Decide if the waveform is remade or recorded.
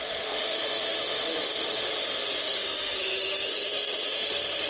remade